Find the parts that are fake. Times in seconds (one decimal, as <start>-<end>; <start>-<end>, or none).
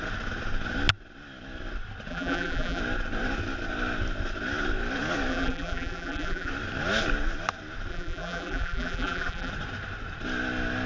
2.1-2.8; 5.3-6.5; 7.9-9.5